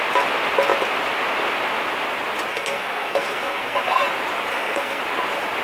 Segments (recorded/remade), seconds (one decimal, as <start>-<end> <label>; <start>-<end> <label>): 0.0-2.5 recorded; 2.5-4.0 remade; 4.0-4.5 recorded; 4.5-5.0 remade; 5.0-5.6 recorded